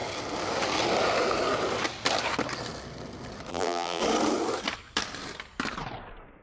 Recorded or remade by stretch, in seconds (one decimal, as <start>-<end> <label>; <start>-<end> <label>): 0.0-3.5 recorded; 3.5-4.0 remade; 4.0-6.4 recorded

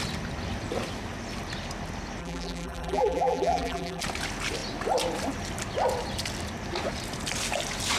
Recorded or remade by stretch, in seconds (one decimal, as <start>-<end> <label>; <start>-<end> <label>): 0.0-2.2 recorded; 2.2-4.0 remade; 4.0-8.0 recorded

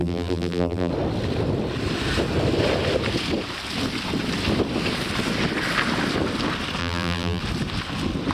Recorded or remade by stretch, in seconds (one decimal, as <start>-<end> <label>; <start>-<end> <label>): 0.0-0.9 remade; 0.9-6.8 recorded; 6.8-7.4 remade; 7.4-8.3 recorded

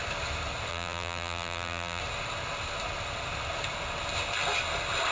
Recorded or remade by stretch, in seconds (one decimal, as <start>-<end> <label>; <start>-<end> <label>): 0.0-0.7 recorded; 0.7-2.0 remade; 2.0-5.1 recorded